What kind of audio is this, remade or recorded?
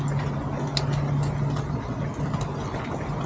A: recorded